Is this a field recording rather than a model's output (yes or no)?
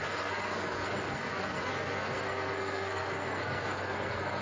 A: no